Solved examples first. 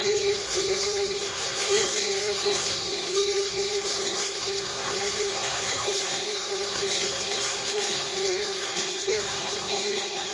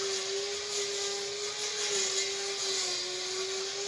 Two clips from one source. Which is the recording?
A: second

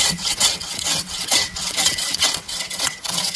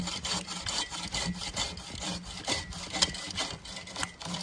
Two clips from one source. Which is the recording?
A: second